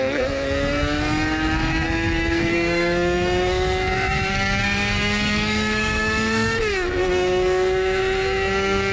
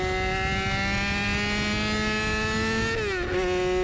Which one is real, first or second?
second